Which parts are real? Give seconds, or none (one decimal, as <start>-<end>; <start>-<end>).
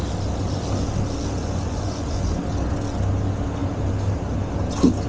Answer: 0.0-1.4; 2.4-5.1